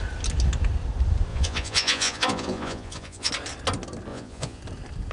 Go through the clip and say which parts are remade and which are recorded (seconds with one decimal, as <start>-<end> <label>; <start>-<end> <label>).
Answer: 0.0-1.3 recorded; 1.3-3.3 remade; 3.3-4.1 recorded; 4.1-4.6 remade; 4.6-5.1 recorded